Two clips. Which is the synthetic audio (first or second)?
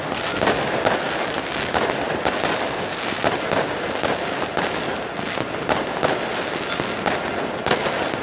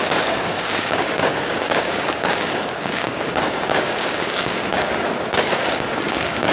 second